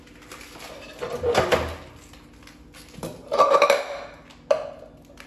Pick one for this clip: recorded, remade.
recorded